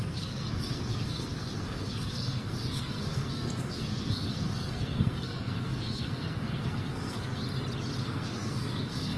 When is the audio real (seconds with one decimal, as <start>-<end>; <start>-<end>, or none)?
7.4-8.0